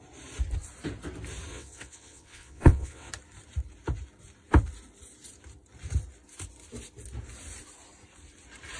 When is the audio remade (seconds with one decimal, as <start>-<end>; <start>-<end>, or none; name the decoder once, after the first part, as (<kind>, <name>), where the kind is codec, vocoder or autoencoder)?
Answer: 1.5-3.1 (vocoder, WaveNeXt)